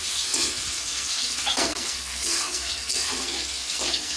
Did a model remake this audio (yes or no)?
yes